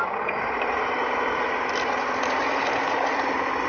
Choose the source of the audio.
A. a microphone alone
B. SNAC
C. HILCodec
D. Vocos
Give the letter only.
A